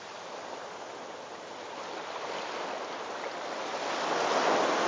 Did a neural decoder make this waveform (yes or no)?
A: no